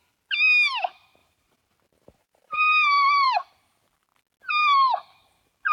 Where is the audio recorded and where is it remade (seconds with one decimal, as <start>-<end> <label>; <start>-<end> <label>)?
0.0-1.2 recorded; 1.2-3.5 remade; 3.5-5.7 recorded